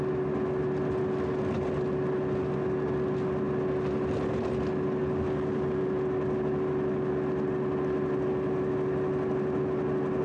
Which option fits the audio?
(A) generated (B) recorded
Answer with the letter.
B